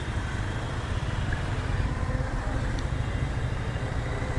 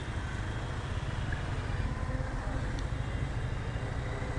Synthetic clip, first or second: first